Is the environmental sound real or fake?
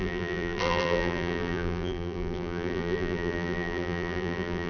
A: fake